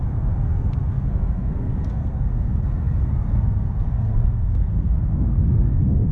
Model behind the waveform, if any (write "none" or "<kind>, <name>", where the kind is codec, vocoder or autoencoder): codec, SNAC